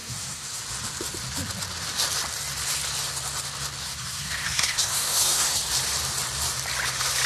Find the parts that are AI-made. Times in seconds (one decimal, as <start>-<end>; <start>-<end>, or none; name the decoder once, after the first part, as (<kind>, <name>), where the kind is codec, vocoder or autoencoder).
0.0-0.6 (codec, SNAC); 3.8-5.6